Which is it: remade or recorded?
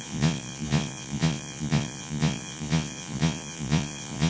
remade